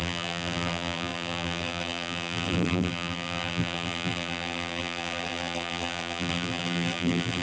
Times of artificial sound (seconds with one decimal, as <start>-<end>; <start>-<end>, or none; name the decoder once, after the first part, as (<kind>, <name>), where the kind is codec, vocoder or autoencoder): 0.0-7.4 (vocoder, BigVGAN v2)